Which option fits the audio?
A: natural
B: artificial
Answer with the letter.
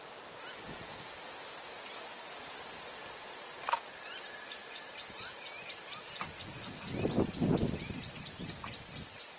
A